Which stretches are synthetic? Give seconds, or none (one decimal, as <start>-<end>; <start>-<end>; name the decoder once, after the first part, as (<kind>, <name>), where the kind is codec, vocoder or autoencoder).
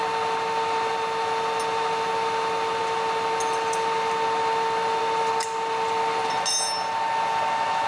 none